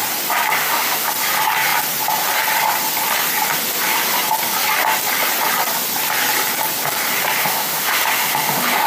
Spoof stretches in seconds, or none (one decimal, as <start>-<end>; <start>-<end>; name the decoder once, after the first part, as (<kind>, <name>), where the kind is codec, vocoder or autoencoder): 0.6-1.1 (autoencoder, DAC-VAE); 7.4-8.9